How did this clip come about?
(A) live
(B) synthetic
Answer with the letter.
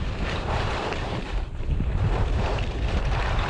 B